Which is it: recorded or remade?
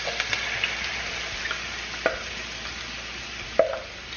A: recorded